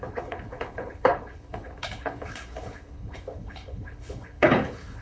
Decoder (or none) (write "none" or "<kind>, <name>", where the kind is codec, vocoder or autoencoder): codec, HILCodec